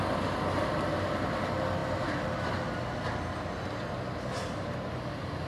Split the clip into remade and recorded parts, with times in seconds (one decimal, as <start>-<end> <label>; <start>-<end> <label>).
0.0-5.5 recorded